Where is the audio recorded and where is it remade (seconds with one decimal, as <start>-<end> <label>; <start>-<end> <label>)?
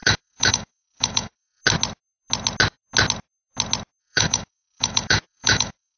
0.0-1.6 remade; 1.6-4.0 recorded; 4.0-6.0 remade